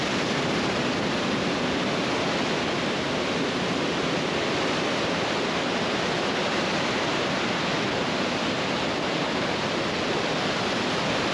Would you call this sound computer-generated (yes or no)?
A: no